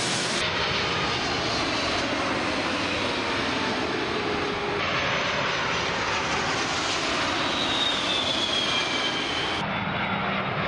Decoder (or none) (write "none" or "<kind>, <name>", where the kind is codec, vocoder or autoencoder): none